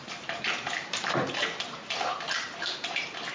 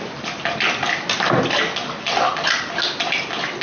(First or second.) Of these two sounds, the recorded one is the second